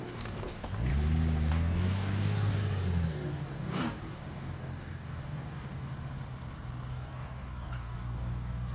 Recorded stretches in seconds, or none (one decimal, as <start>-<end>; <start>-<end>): 0.9-1.5; 2.6-3.1; 5.9-6.9